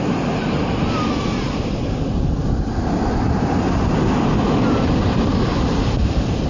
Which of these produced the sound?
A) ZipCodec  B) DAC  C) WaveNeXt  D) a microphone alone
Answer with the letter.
D